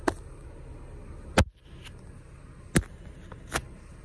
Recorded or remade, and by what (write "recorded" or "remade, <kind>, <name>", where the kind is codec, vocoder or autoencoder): recorded